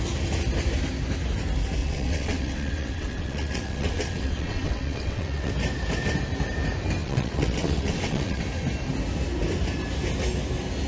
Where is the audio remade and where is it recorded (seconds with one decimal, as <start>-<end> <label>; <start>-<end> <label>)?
0.0-1.8 recorded; 1.8-5.5 remade; 5.5-7.0 recorded; 7.0-8.4 remade; 8.4-10.9 recorded